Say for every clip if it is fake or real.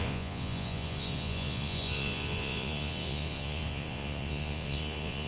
fake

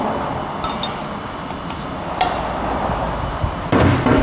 real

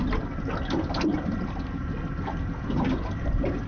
real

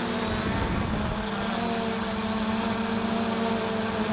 real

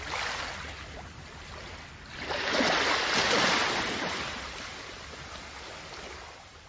real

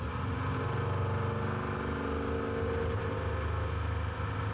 real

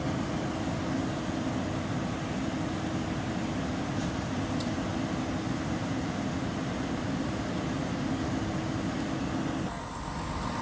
real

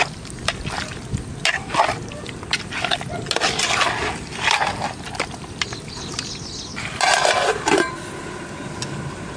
real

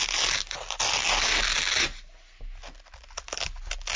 real